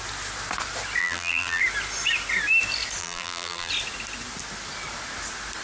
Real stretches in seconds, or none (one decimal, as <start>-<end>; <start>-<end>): 0.0-1.0; 1.6-3.0; 3.7-5.6